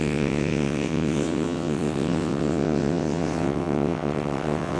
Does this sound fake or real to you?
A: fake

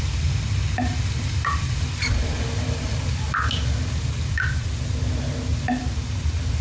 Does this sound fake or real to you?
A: real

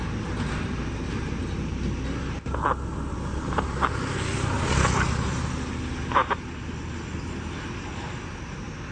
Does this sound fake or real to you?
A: real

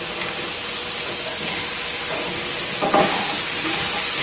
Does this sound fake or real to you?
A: real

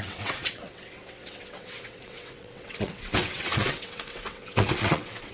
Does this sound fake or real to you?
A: fake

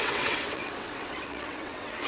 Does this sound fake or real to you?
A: fake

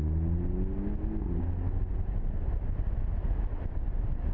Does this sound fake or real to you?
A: real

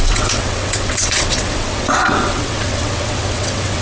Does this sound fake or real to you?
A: fake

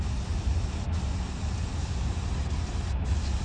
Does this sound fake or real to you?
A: real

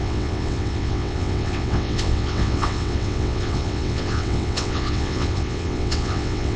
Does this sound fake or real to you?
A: fake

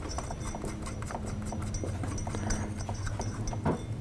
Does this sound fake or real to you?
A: real